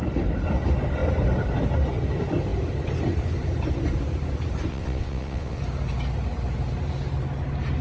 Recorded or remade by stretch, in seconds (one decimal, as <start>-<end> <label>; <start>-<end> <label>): 0.0-4.7 recorded; 4.7-5.6 remade; 5.6-7.8 recorded